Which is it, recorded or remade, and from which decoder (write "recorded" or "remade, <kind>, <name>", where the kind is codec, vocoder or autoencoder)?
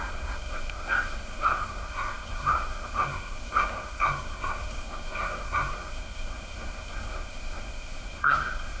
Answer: remade, codec, SNAC